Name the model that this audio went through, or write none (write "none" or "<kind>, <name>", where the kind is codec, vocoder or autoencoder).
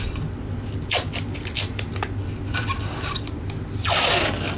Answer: none